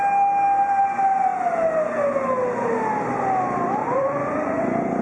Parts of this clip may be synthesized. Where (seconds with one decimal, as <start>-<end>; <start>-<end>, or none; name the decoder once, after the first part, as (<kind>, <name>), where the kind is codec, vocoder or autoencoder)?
3.8-5.0 (vocoder, Vocos)